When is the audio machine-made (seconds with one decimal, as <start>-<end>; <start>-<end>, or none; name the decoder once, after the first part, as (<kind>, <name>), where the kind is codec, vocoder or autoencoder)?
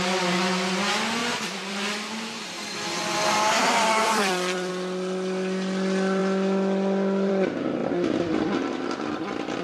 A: 1.2-4.7 (vocoder, BigVGAN v2); 6.2-7.3